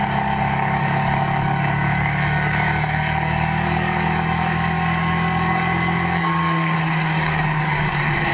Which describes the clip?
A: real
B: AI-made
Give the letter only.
B